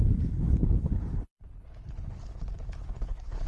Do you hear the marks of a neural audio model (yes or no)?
yes